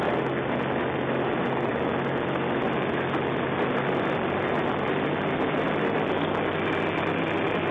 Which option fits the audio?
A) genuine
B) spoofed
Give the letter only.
A